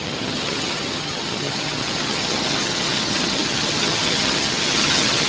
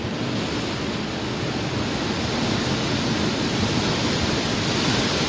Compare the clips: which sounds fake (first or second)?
first